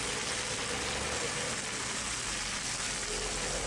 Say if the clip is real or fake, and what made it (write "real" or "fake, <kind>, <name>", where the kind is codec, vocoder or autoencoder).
real